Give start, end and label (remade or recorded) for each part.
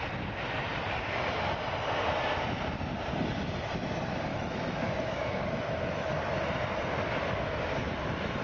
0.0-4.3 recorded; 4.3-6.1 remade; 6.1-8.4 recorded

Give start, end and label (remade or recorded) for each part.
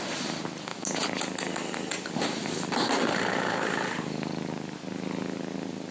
0.0-5.9 recorded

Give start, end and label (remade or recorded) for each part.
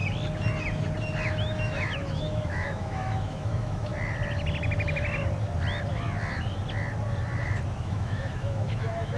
0.0-1.3 recorded; 1.3-3.9 remade; 3.9-7.8 recorded; 7.8-9.2 remade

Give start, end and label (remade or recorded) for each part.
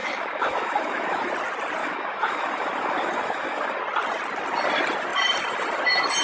0.0-1.3 remade; 1.3-1.8 recorded; 1.8-3.8 remade; 3.8-6.2 recorded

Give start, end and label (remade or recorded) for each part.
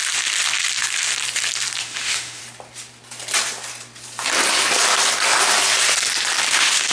0.0-1.8 recorded; 1.8-2.4 remade; 2.4-6.5 recorded; 6.5-6.9 remade